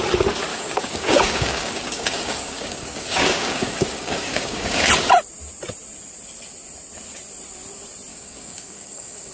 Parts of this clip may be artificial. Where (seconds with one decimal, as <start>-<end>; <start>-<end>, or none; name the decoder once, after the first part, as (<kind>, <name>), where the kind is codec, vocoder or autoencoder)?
0.5-4.9 (codec, DAC); 8.1-9.3